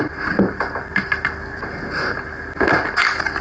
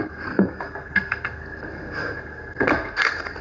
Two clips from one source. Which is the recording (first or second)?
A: first